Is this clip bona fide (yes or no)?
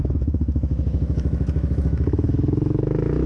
no